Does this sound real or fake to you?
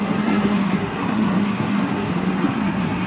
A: fake